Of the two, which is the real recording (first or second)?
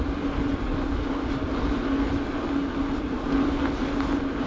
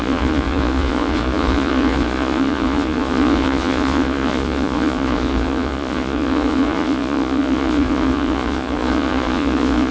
first